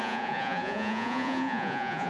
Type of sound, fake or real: fake